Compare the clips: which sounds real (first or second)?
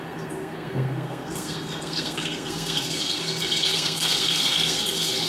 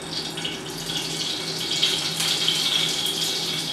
second